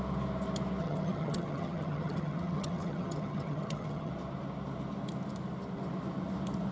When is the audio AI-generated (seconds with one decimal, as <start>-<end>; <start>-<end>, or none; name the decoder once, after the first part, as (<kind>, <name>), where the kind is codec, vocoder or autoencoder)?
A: 0.8-4.1 (vocoder, HiFi-GAN)